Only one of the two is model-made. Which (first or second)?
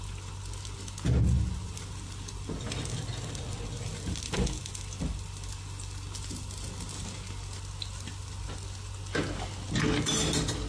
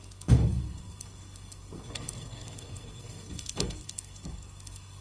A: second